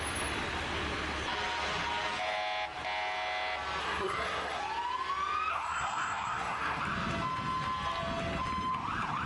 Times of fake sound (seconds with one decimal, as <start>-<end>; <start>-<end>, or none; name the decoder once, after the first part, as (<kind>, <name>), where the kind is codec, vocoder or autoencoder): 3.8-4.6 (codec, SNAC); 5.5-6.8